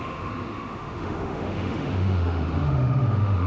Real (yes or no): no